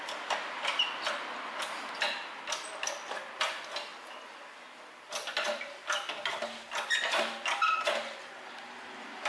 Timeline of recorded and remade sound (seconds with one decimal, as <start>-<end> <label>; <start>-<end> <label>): 0.0-9.3 recorded